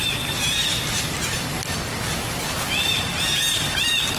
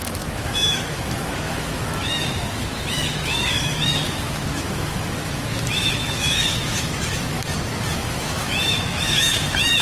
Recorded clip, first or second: first